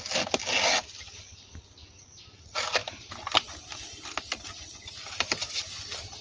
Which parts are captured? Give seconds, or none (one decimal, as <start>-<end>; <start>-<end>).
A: 0.0-6.2